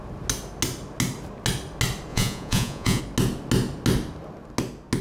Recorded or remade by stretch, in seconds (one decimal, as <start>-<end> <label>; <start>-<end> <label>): 0.0-2.1 recorded; 2.1-3.0 remade; 3.0-5.0 recorded